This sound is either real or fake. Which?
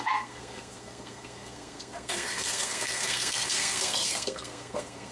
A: fake